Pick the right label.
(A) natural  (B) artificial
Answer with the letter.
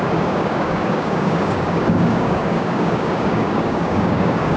B